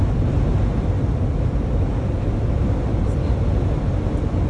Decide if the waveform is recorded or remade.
recorded